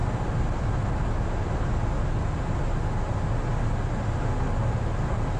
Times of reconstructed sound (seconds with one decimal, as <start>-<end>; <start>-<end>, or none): 0.0-1.1